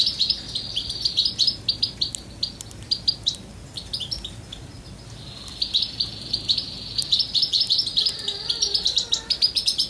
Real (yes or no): yes